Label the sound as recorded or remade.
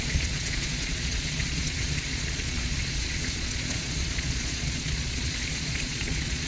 remade